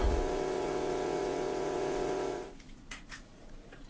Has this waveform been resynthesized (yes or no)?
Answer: yes